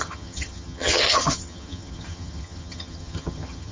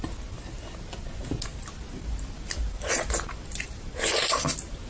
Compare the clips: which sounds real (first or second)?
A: second